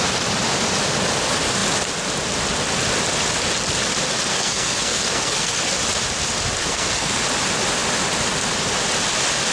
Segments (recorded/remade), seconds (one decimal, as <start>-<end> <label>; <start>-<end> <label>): 0.0-4.3 recorded; 4.3-5.6 remade; 5.6-6.6 recorded; 6.6-7.2 remade; 7.2-9.5 recorded

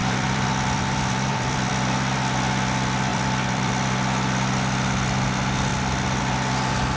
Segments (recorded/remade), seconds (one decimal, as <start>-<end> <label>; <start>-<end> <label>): 0.0-1.7 remade; 1.7-3.1 recorded; 3.1-3.7 remade; 3.7-7.0 recorded

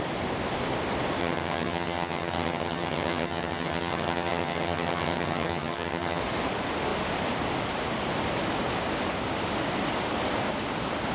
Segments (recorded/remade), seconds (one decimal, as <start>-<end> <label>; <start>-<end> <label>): 0.0-1.2 recorded; 1.2-6.2 remade; 6.2-11.1 recorded

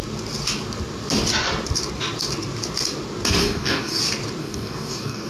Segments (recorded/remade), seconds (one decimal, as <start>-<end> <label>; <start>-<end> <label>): 0.0-3.4 recorded; 3.4-4.0 remade; 4.0-4.4 recorded; 4.4-5.3 remade

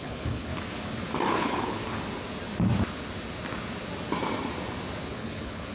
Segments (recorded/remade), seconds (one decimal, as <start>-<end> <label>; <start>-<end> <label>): 0.0-0.5 remade; 0.5-1.3 recorded; 1.3-1.8 remade; 1.8-5.1 recorded; 5.1-5.7 remade